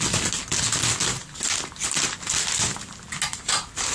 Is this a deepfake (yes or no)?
no